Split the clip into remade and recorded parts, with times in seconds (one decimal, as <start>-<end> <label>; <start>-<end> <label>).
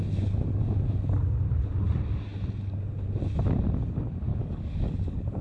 0.0-4.3 recorded; 4.3-5.4 remade